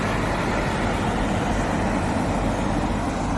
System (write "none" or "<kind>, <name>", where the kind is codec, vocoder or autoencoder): none